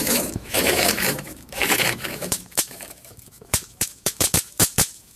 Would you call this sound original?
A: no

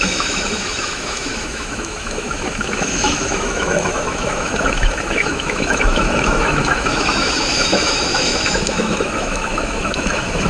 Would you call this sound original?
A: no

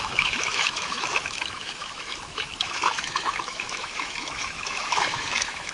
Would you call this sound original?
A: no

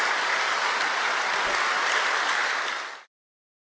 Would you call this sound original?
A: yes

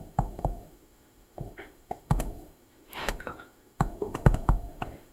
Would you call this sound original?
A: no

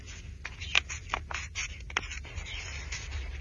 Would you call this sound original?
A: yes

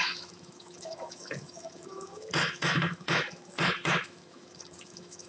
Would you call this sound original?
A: no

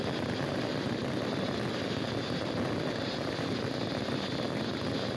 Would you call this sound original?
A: yes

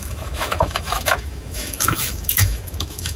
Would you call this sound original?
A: no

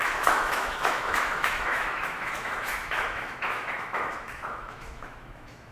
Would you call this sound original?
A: no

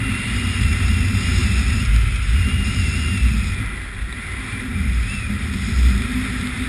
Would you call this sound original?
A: yes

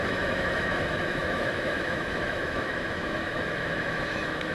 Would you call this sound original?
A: no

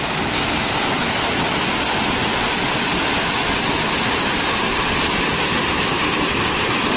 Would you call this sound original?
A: yes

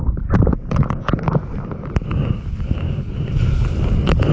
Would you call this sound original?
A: yes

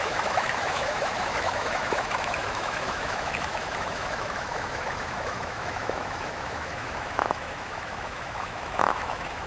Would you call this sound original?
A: no